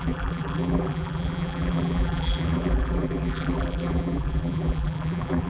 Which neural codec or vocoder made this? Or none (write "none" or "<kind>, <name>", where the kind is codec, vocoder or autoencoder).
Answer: vocoder, BigVGAN v2